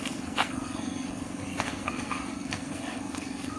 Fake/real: fake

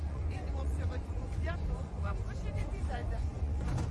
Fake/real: fake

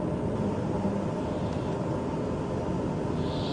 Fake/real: real